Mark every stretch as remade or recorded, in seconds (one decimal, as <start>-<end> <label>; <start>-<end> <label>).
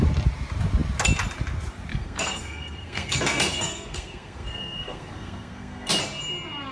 0.0-1.9 recorded; 1.9-5.9 remade; 5.9-6.7 recorded